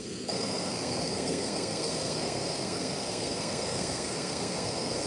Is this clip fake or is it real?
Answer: fake